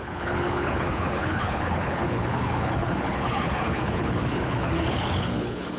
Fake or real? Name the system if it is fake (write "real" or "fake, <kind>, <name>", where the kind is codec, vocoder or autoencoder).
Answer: fake, codec, HILCodec